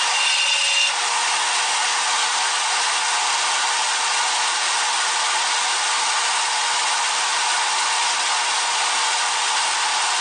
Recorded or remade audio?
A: recorded